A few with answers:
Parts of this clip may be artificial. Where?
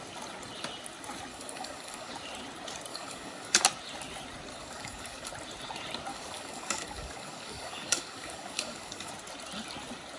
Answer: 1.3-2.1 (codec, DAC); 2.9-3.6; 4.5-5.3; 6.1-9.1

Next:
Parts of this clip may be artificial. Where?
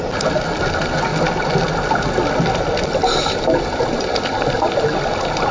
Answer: none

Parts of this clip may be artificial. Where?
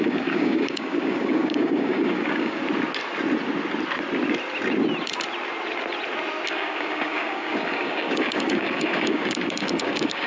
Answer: 0.0-2.6 (codec, DAC); 6.5-10.3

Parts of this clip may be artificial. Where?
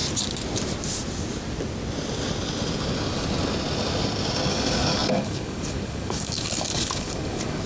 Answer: 4.5-7.7 (codec, DAC)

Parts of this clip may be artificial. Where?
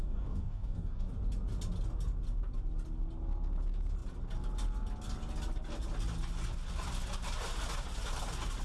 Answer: 0.0-1.1 (codec, DAC)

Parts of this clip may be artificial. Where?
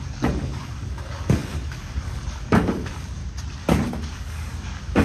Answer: 0.0-3.2 (codec, DAC); 4.0-5.0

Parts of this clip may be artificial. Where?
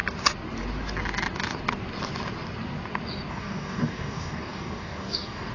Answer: 3.3-5.5 (codec, DAC)